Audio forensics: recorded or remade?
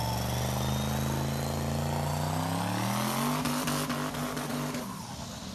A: recorded